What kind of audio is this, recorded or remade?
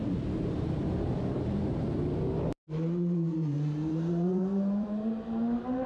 remade